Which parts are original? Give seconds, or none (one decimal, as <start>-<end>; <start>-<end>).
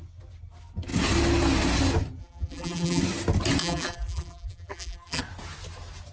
0.0-2.2; 3.0-3.6; 5.2-6.1